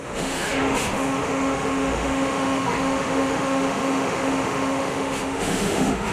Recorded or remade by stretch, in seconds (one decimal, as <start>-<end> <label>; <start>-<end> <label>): 0.0-6.1 remade